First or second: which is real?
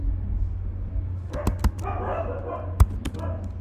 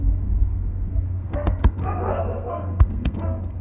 first